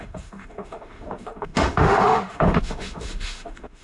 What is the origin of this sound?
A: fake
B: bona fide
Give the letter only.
A